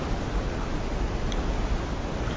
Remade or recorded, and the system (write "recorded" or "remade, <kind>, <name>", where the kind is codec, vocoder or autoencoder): recorded